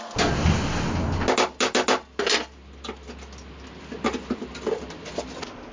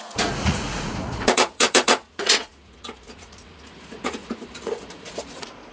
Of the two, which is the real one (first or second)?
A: first